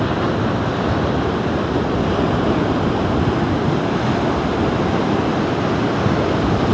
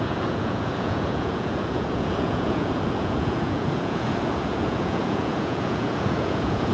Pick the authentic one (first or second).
first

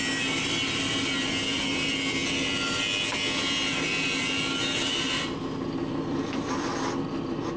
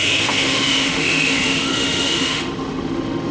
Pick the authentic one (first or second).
first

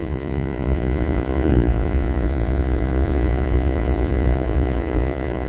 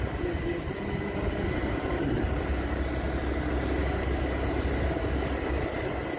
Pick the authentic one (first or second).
second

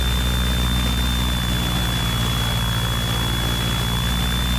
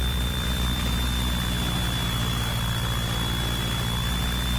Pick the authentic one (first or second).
first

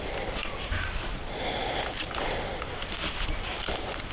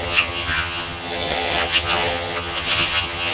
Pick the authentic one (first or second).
first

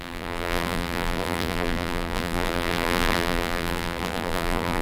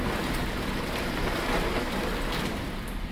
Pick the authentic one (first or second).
second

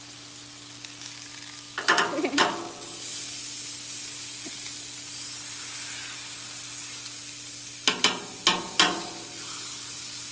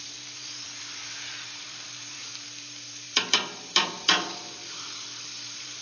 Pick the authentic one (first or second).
first